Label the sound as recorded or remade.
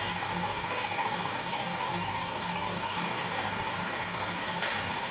remade